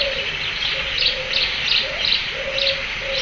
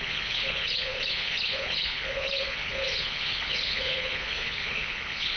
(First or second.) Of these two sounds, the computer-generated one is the second